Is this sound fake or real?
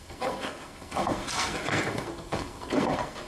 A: fake